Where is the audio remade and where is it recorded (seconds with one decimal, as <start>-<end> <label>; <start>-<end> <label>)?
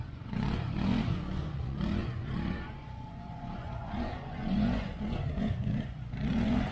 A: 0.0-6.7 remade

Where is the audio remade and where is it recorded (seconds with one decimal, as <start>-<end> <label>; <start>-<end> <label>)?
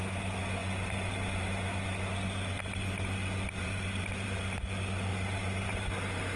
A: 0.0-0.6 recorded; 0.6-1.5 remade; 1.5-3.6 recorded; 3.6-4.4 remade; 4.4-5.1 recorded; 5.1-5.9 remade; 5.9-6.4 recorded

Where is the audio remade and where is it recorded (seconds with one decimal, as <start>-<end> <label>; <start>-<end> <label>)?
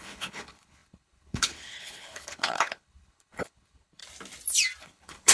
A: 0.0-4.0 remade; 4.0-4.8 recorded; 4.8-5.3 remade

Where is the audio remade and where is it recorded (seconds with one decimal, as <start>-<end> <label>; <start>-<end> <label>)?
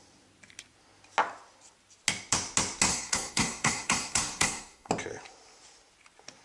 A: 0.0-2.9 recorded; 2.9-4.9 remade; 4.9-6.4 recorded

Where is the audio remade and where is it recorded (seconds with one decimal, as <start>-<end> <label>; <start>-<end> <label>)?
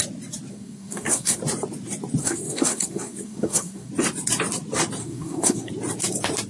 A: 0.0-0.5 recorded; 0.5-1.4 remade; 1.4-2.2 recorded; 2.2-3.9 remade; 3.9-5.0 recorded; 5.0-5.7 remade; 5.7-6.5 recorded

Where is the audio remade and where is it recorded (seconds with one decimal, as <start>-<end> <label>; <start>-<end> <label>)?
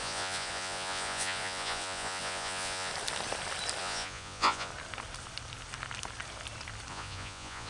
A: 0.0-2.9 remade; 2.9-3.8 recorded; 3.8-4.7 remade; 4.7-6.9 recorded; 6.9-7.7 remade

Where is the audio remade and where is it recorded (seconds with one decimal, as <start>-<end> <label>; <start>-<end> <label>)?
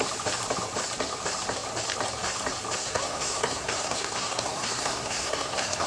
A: 0.0-2.8 recorded; 2.8-5.9 remade